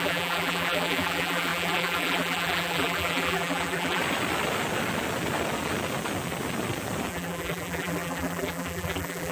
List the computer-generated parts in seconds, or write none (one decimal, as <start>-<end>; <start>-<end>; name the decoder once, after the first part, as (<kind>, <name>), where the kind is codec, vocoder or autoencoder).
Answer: 0.0-4.0 (vocoder, BigVGAN v2); 7.1-9.3